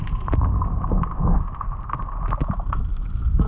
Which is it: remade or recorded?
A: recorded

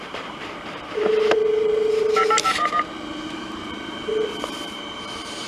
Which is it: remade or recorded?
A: remade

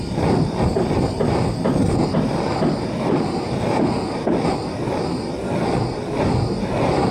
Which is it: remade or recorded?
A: recorded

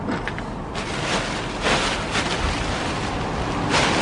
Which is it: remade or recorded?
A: recorded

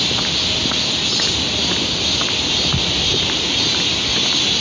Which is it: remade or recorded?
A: recorded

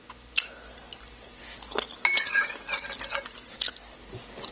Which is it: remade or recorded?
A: recorded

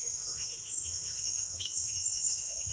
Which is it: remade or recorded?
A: remade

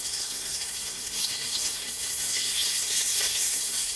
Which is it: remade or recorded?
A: remade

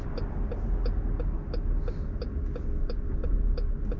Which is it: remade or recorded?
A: recorded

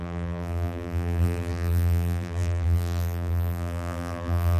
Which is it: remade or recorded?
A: remade